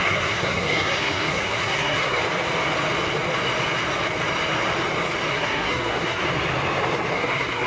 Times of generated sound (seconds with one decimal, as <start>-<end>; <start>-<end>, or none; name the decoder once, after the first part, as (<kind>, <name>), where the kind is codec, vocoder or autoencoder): 0.0-2.2 (codec, SNAC); 5.3-6.2; 7.1-7.7